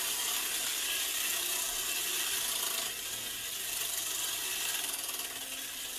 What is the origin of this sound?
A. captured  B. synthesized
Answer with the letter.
A